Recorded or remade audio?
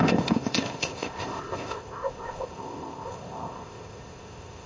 remade